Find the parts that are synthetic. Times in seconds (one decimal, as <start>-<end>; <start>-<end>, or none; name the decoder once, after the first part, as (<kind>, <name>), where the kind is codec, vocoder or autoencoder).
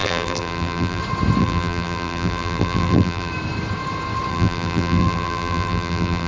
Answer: 0.0-1.0 (vocoder, BigVGAN v2); 1.4-3.3; 4.3-6.3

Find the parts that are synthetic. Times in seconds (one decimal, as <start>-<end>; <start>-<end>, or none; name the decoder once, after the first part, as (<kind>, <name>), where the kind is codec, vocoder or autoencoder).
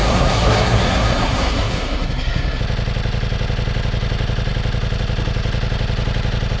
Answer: 0.0-2.6 (codec, SNAC)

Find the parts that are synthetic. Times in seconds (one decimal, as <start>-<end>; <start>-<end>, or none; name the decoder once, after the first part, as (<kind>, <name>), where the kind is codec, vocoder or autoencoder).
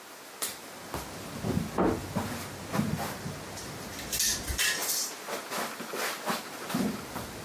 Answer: none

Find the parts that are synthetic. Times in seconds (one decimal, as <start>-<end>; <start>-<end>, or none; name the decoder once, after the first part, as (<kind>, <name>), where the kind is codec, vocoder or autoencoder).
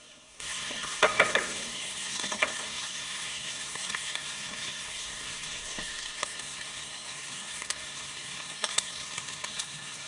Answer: 0.0-10.1 (codec, SNAC)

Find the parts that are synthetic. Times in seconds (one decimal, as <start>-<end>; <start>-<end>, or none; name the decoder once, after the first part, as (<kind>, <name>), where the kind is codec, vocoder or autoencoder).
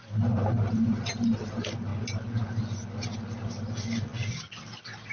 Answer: 0.0-1.9 (vocoder, BigVGAN v2); 2.5-4.1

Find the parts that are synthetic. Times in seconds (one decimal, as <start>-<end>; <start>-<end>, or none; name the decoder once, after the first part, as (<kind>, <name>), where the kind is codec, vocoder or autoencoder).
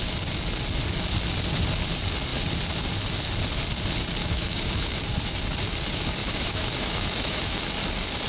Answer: 4.2-5.0 (autoencoder, DAC-VAE); 6.2-7.6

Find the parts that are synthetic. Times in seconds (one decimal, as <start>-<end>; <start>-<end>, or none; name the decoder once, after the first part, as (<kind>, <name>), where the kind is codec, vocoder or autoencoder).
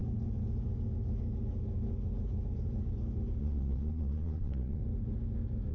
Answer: 3.4-4.8 (vocoder, Vocos)